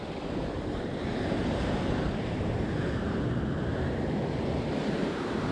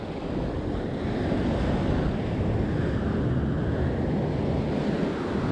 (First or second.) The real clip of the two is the second